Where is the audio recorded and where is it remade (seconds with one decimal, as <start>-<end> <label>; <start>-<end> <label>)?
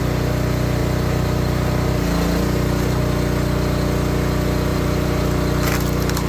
0.0-0.8 recorded; 0.8-1.9 remade; 1.9-4.7 recorded; 4.7-5.2 remade; 5.2-6.3 recorded